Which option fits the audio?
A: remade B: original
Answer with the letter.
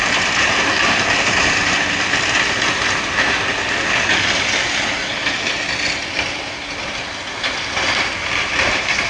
B